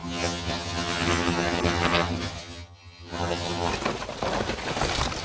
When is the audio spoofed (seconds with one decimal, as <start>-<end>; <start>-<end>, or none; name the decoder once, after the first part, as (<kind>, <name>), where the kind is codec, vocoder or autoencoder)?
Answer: 0.0-3.7 (vocoder, HiFi-GAN)